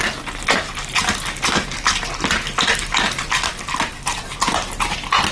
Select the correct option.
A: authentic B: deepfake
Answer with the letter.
A